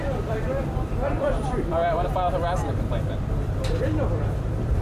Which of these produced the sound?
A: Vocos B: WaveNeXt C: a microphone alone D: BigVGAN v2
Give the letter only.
D